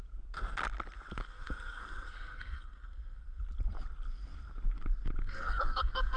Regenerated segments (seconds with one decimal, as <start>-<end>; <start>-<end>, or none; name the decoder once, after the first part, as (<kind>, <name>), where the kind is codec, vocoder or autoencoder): 1.2-3.4 (codec, SNAC); 5.2-6.2